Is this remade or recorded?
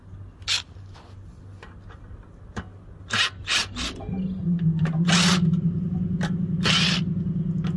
recorded